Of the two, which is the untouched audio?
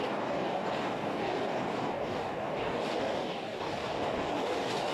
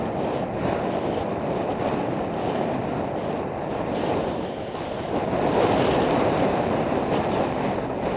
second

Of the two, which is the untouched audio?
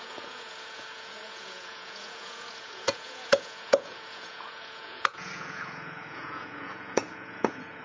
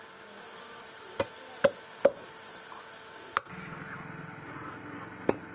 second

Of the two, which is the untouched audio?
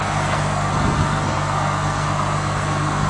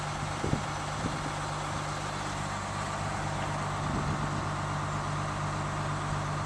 second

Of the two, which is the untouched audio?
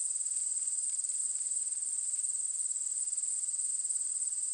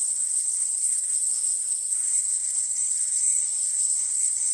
first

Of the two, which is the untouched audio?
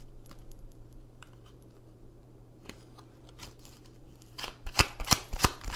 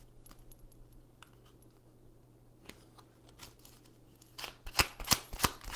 second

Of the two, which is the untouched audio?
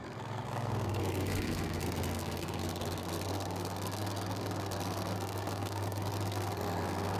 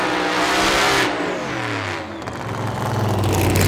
second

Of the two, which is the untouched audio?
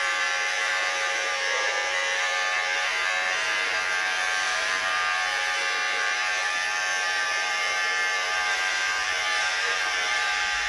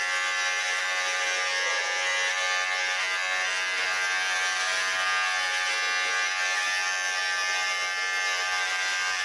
second